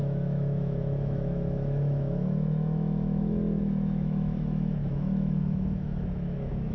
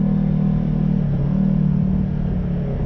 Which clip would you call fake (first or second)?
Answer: first